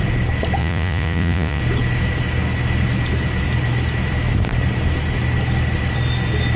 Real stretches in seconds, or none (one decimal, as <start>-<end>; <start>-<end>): 0.0-0.6; 1.6-6.6

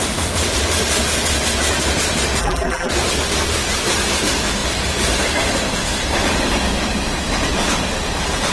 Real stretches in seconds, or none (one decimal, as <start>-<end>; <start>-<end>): 0.0-2.4; 2.9-8.5

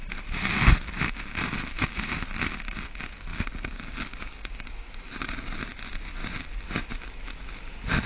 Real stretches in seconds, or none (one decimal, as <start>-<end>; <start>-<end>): 0.0-3.3; 5.5-8.1

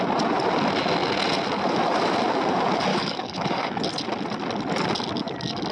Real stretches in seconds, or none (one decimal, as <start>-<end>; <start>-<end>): 0.0-2.9; 3.7-5.7